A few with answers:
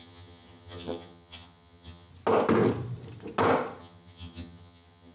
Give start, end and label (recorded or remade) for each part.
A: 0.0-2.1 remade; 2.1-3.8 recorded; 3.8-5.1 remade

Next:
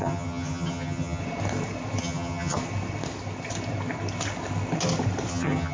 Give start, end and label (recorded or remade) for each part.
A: 0.0-1.2 remade; 1.2-2.0 recorded; 2.0-2.6 remade; 2.6-5.3 recorded; 5.3-5.7 remade

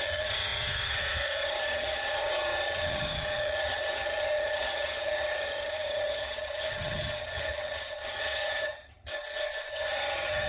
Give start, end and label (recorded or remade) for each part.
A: 0.0-9.1 remade; 9.1-9.7 recorded; 9.7-10.5 remade

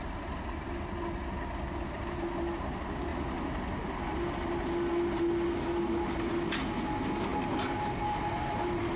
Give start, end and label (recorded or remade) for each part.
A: 0.0-9.0 recorded

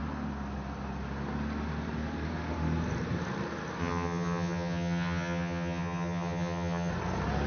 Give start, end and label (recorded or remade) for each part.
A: 0.0-3.8 recorded; 3.8-6.9 remade; 6.9-7.5 recorded